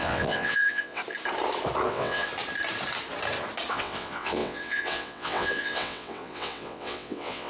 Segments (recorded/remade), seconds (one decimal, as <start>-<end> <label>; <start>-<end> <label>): 0.0-1.0 remade; 1.0-1.9 recorded; 1.9-2.3 remade; 2.3-3.7 recorded; 3.7-7.5 remade